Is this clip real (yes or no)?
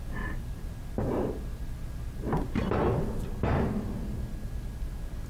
yes